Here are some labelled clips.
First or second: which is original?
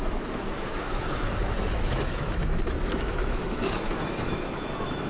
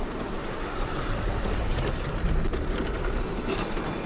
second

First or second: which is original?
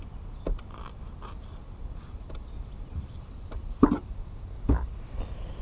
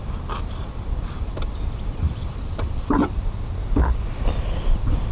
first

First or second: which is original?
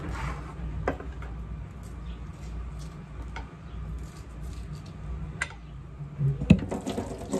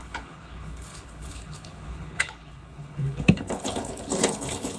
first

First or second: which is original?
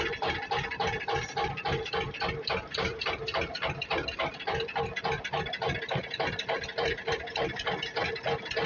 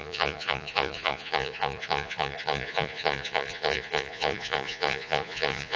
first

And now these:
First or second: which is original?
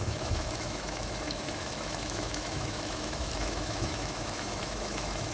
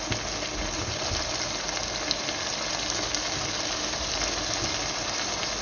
second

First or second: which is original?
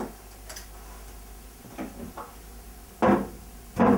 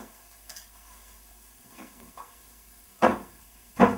first